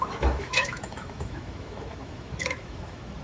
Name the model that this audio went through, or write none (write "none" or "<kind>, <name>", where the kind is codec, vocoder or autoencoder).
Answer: autoencoder, DAC-VAE